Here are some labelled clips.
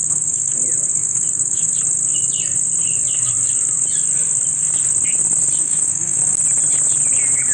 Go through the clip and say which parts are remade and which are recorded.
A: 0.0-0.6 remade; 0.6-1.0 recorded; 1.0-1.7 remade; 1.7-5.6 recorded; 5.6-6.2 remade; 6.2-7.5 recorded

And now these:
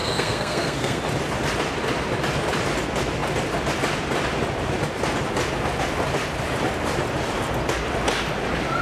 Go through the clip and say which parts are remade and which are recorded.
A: 0.0-1.0 remade; 1.0-8.8 recorded

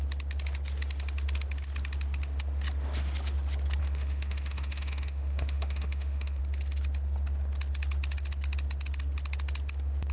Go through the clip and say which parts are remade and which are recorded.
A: 0.0-3.8 recorded; 3.8-6.4 remade; 6.4-10.1 recorded